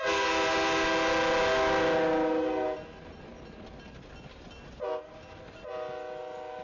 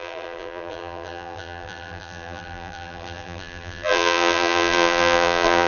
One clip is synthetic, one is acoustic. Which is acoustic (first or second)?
first